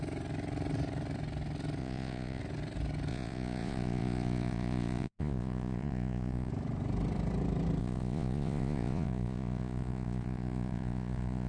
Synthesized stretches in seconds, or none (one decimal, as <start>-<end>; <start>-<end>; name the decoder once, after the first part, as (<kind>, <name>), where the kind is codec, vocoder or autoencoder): 1.8-2.4 (vocoder, Vocos); 3.1-6.5; 7.8-11.5